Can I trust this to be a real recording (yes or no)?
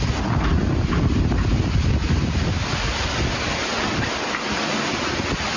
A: yes